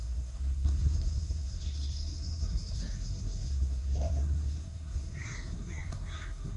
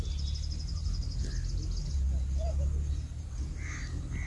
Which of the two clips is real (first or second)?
second